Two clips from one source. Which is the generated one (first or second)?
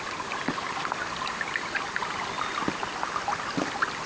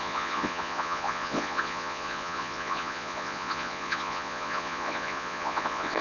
second